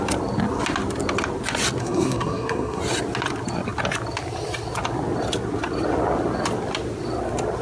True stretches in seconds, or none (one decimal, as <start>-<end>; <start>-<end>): 0.0-1.8; 2.8-7.6